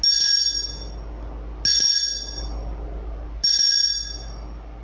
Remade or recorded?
recorded